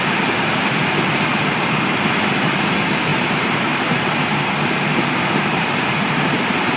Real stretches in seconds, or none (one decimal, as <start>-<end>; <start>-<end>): 0.0-1.3; 2.0-3.1